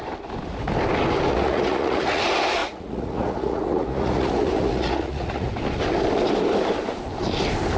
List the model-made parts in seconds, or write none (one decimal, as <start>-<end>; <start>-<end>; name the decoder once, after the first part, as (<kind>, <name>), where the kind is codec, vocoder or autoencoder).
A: 1.3-2.2 (vocoder, Vocos); 2.6-5.5